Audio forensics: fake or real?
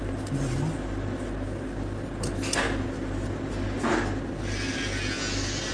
real